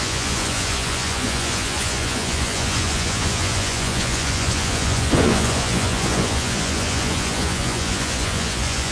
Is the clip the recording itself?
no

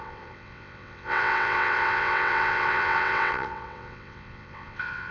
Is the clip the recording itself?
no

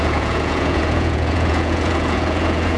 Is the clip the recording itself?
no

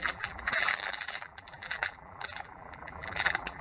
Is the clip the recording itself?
no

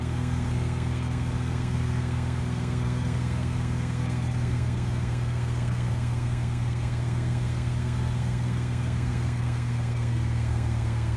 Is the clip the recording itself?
no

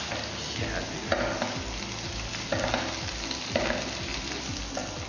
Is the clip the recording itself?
yes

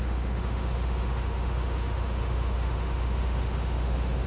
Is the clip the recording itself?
no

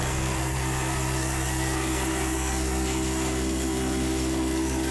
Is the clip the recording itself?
no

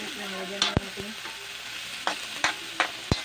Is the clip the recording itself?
yes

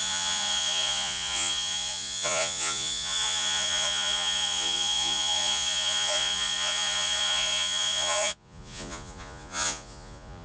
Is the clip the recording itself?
no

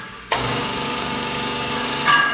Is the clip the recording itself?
no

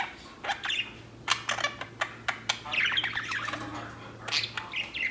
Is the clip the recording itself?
yes